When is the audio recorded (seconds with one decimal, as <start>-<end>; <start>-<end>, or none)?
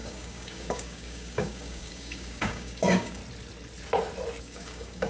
3.2-4.4